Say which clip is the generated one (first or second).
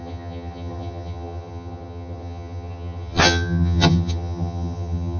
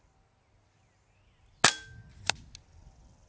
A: first